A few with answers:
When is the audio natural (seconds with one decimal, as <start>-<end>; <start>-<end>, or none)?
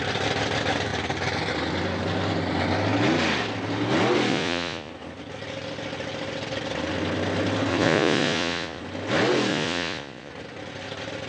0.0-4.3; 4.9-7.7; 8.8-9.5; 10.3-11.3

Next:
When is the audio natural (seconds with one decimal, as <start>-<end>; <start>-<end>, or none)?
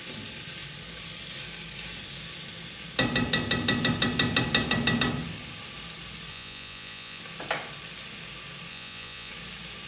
0.0-6.3; 7.2-8.7; 9.3-9.9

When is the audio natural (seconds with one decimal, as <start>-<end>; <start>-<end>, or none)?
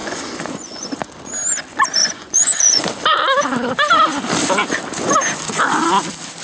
1.0-2.0; 2.8-6.4